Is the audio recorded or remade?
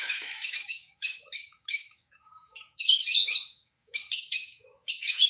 remade